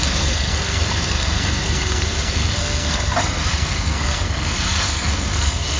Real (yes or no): no